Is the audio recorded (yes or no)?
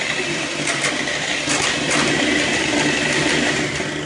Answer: yes